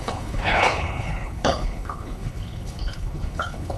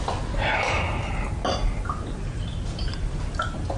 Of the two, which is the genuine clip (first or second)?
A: second